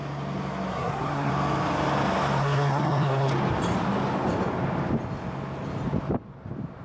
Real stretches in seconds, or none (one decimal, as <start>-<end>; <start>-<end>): 0.0-0.7; 1.3-2.4; 3.3-6.8